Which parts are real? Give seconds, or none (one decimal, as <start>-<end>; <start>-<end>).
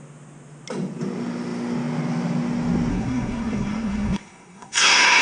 0.0-2.9